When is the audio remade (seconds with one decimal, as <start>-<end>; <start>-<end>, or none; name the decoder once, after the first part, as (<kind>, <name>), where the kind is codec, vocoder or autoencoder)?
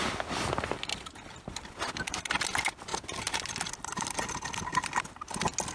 none